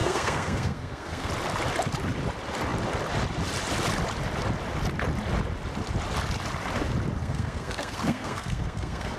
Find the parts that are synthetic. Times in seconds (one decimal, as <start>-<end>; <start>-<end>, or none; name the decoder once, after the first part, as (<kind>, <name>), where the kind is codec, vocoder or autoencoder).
0.0-1.3 (codec, SNAC); 7.2-9.2